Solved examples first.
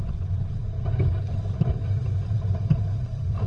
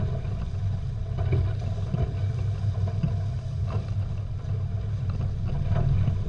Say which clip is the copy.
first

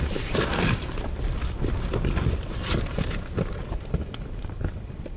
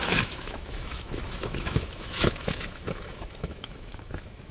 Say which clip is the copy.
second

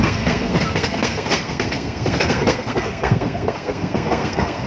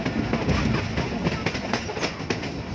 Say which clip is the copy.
first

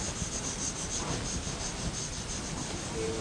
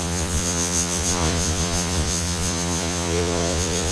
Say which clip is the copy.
second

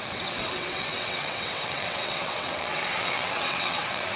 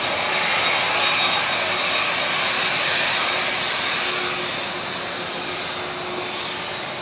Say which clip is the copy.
first